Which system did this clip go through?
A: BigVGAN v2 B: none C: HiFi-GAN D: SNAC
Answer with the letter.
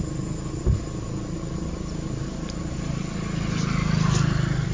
B